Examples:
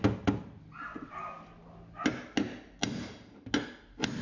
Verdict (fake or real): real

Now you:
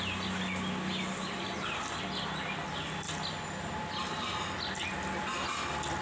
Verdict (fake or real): real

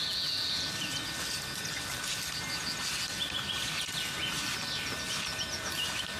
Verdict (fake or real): real